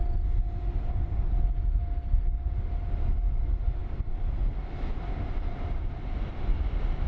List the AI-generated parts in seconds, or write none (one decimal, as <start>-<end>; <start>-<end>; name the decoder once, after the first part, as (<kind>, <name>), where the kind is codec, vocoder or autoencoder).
none